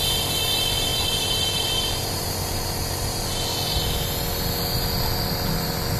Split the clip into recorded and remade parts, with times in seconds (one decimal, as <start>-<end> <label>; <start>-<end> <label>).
0.0-0.9 recorded; 0.9-3.2 remade; 3.2-6.0 recorded